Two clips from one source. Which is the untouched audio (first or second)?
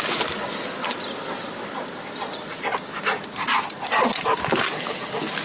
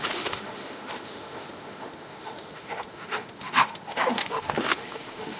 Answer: first